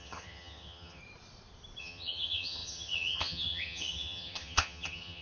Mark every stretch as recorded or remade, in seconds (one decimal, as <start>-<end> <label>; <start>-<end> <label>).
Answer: 0.0-1.0 remade; 1.0-1.8 recorded; 1.8-5.2 remade